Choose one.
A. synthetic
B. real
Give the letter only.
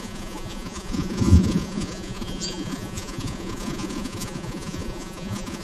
A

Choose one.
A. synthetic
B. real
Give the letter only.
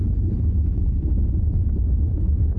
B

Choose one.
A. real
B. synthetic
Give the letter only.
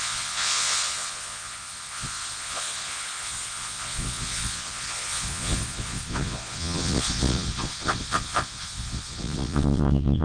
B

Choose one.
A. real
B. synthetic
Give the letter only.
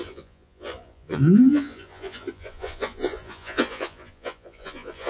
B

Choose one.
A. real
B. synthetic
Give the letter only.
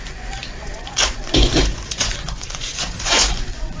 B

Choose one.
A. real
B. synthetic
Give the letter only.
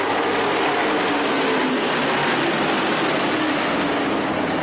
A